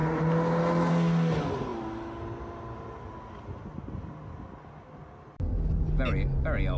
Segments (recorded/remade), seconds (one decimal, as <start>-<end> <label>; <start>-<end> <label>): 0.0-6.8 recorded